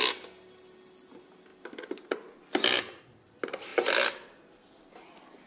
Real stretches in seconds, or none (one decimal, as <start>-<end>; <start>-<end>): 0.0-5.5